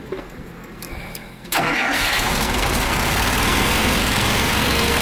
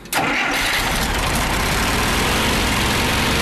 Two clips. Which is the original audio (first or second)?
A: second